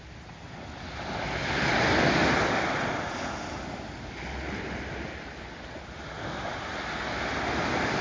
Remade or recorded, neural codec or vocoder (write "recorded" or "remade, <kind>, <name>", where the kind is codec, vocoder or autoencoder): recorded